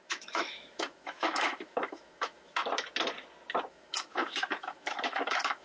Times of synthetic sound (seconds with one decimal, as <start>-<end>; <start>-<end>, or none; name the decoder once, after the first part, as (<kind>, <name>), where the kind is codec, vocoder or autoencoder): 0.0-2.6 (autoencoder, DAC-VAE); 3.7-5.6